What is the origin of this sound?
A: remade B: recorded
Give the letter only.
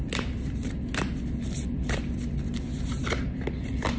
B